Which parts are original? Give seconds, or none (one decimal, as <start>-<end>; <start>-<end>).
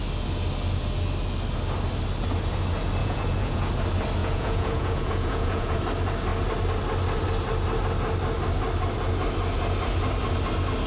0.0-3.0; 3.7-4.2; 5.8-10.9